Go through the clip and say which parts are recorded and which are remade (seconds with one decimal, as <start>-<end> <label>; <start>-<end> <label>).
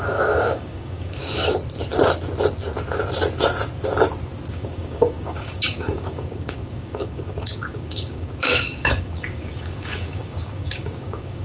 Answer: 0.0-1.6 remade; 1.6-4.5 recorded; 4.5-11.4 remade